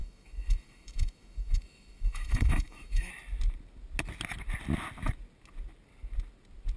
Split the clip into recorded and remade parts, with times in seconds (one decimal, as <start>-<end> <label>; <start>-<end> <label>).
0.0-3.1 remade; 3.1-6.8 recorded

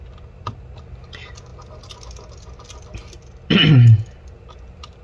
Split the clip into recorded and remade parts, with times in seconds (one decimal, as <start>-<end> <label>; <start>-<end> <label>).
0.0-5.0 recorded

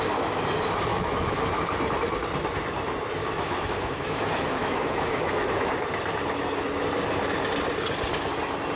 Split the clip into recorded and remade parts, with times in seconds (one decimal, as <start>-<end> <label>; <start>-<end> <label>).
0.0-0.9 recorded; 0.9-1.5 remade; 1.5-3.2 recorded; 3.2-5.7 remade; 5.7-8.8 recorded

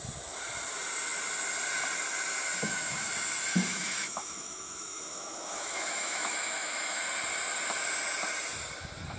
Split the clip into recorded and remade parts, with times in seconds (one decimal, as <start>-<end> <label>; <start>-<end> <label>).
0.0-2.6 recorded; 2.6-3.1 remade; 3.1-3.7 recorded; 3.7-7.0 remade; 7.0-9.2 recorded

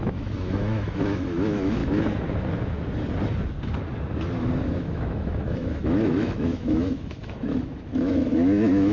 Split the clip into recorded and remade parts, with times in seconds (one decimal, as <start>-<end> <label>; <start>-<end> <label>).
0.0-1.8 remade; 1.8-4.7 recorded; 4.7-8.9 remade

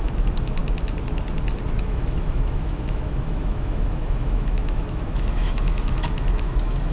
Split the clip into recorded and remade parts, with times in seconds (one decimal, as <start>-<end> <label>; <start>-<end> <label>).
0.0-0.6 remade; 0.6-1.8 recorded; 1.8-6.9 remade

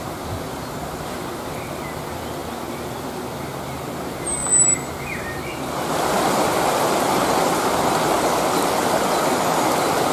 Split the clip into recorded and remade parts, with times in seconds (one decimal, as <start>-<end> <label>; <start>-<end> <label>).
0.0-10.1 recorded